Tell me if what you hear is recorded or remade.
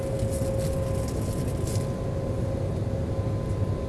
recorded